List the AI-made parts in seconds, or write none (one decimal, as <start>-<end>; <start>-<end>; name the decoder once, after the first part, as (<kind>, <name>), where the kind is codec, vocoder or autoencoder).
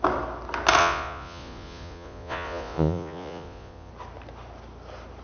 0.8-3.9 (vocoder, Vocos)